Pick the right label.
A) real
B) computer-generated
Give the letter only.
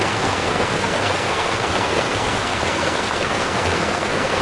B